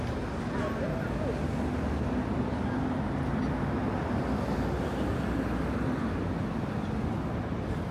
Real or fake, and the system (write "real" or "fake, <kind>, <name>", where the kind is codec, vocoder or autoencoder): real